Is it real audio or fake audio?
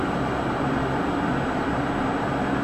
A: real